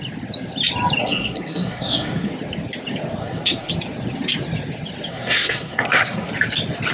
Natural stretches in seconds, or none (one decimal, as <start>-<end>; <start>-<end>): 0.0-1.0; 2.3-3.2; 3.7-5.1; 6.3-6.9